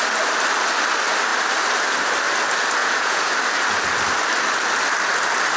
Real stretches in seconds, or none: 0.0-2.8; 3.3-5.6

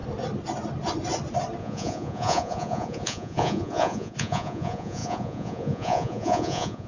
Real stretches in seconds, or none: 0.0-1.6

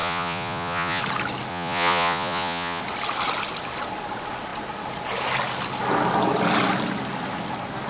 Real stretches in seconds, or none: 1.0-1.5; 2.8-7.9

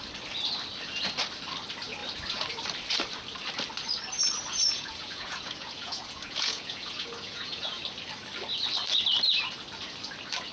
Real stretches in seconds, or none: 0.0-4.5; 7.8-10.5

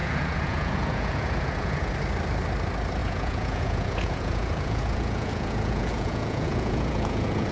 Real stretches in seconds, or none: 1.9-3.0

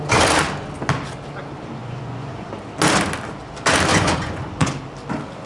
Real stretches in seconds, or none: 0.0-1.8; 2.5-3.9; 4.7-5.5

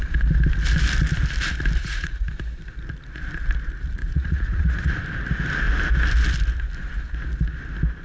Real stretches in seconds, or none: 0.0-1.8; 2.3-4.0; 5.0-8.0

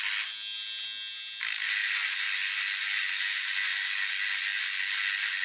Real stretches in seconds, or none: 0.0-5.4